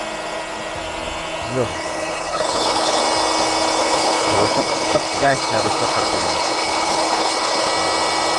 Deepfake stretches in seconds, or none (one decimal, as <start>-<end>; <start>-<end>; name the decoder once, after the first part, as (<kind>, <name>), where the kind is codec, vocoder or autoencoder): 1.7-3.0 (codec, HILCodec); 3.8-7.7